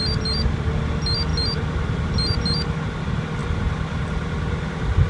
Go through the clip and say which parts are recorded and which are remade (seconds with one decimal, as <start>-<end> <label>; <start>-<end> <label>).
0.0-5.1 recorded